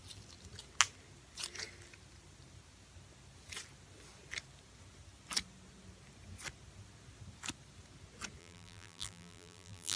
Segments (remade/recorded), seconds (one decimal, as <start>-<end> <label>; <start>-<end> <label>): 0.0-8.4 recorded; 8.4-10.0 remade